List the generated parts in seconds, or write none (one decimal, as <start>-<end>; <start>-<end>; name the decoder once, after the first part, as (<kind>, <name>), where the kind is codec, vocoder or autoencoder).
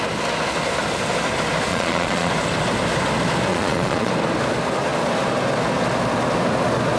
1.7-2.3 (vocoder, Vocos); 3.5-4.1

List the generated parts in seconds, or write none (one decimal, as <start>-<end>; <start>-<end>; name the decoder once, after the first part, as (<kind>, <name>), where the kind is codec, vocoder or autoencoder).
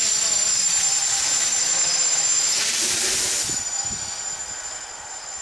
1.6-2.6 (autoencoder, DAC-VAE)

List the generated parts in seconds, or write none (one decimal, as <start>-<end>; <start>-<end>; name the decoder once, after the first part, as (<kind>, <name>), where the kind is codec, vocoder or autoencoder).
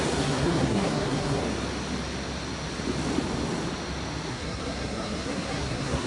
0.0-1.4 (codec, SNAC); 4.3-6.1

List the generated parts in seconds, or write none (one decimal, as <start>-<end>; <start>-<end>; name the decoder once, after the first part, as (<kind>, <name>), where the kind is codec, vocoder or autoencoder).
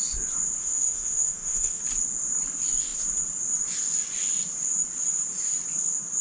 0.6-1.8 (autoencoder, DAC-VAE)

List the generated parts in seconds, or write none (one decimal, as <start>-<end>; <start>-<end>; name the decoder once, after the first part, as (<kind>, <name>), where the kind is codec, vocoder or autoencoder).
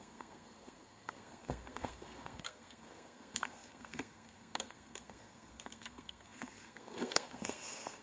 0.0-8.0 (codec, SNAC)